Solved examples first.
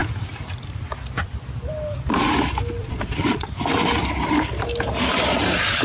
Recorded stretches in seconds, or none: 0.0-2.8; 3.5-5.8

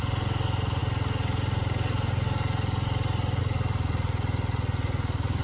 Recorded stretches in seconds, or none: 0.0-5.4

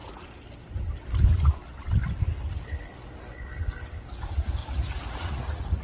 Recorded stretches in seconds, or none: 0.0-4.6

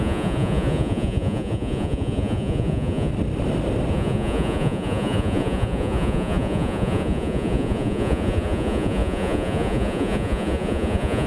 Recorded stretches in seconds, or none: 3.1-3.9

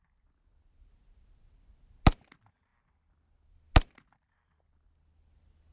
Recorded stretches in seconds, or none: 0.0-5.7

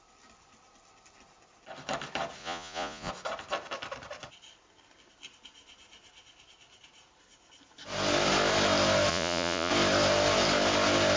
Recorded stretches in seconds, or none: 0.0-2.4; 3.1-9.1; 9.7-11.2